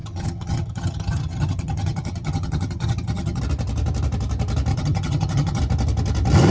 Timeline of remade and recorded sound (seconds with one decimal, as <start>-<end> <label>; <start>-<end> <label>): 0.0-3.4 remade; 3.4-4.7 recorded; 4.7-5.6 remade; 5.6-6.5 recorded